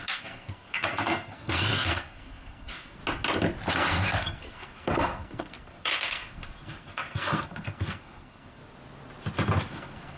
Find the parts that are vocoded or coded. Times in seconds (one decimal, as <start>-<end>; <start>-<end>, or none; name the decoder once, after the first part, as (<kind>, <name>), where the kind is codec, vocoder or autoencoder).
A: 0.0-3.0 (codec, SNAC); 3.7-8.6; 9.7-10.2